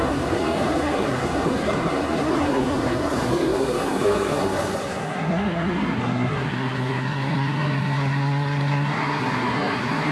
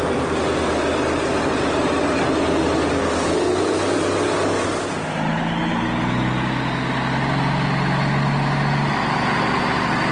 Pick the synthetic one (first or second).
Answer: first